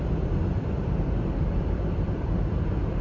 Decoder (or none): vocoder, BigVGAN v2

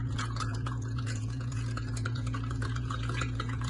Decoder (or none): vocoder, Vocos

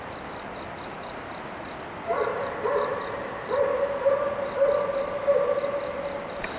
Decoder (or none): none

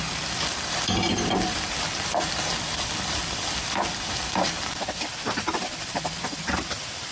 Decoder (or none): vocoder, BigVGAN v2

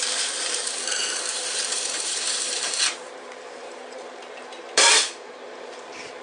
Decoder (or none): vocoder, BigVGAN v2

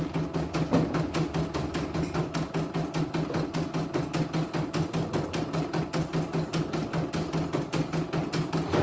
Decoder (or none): none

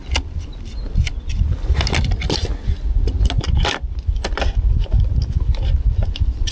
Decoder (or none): none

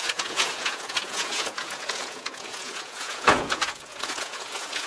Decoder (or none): vocoder, Vocos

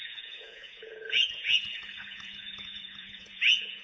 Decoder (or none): vocoder, Vocos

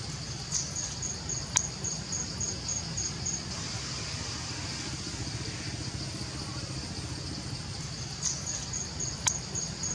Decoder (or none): none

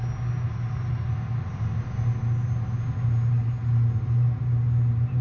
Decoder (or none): none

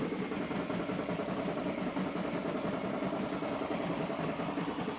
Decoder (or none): none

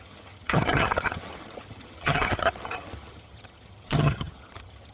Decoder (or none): vocoder, HiFi-GAN